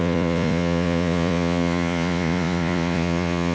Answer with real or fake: fake